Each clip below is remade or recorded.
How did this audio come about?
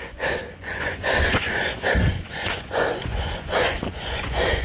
remade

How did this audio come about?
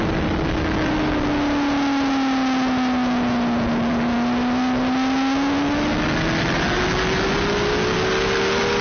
recorded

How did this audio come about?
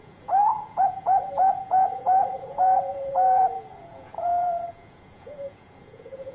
remade